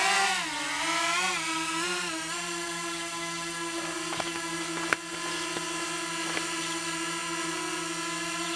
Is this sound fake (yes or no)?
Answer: no